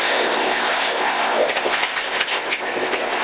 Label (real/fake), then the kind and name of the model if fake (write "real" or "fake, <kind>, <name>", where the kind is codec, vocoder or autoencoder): fake, codec, ZipCodec